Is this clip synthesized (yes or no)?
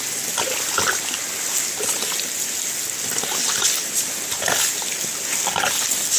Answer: no